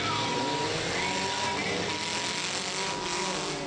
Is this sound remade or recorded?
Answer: recorded